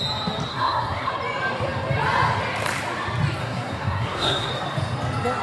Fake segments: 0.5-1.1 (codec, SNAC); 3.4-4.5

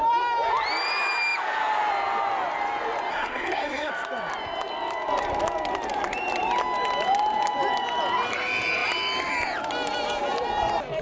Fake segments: 3.1-3.9 (codec, SNAC)

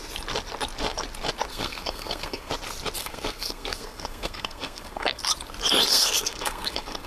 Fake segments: 1.5-2.5 (codec, SNAC); 3.0-5.2; 5.9-7.1

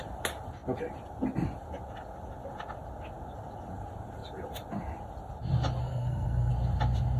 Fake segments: 5.8-6.5 (codec, SNAC)

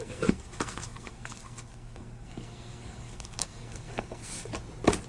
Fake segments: 0.0-4.5 (codec, SNAC)